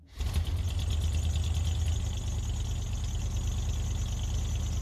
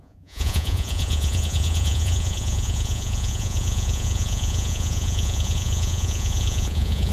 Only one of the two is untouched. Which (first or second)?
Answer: first